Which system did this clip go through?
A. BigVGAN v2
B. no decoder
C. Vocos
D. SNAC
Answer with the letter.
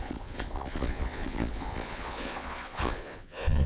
C